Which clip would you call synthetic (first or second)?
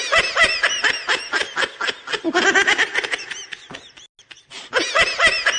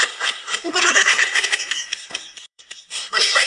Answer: second